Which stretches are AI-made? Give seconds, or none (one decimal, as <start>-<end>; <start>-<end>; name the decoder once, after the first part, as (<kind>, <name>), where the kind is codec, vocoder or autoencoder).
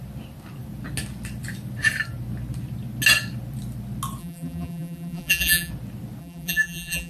4.2-5.7 (vocoder, BigVGAN v2); 6.2-7.1